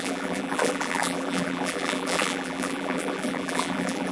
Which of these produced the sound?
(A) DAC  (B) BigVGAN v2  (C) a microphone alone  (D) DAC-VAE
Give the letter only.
B